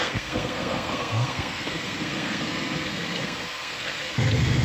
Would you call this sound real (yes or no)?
no